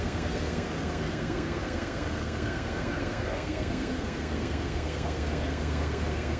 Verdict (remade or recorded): remade